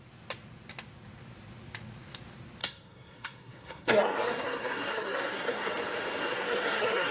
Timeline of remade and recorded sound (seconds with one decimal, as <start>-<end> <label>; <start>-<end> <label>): 0.0-2.6 recorded; 2.6-5.7 remade; 5.7-6.2 recorded; 6.2-7.1 remade